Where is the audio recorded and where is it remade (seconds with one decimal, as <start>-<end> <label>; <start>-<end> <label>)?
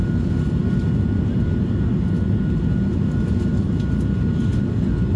0.0-5.2 recorded